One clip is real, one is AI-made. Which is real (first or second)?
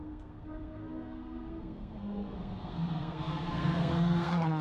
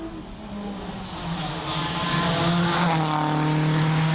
second